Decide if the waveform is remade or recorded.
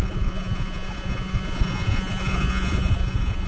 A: remade